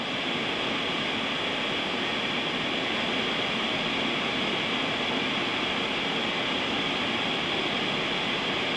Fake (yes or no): no